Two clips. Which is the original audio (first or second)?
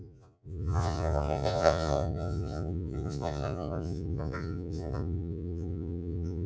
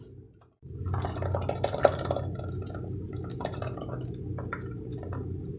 second